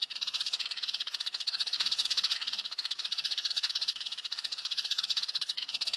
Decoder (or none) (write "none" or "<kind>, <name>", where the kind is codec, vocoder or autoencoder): codec, SNAC